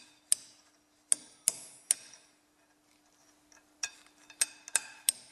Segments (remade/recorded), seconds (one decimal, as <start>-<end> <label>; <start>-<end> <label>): 0.0-5.3 recorded